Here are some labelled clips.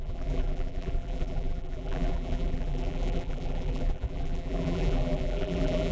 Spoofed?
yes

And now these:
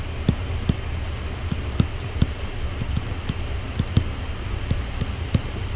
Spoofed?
no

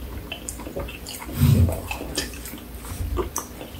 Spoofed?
yes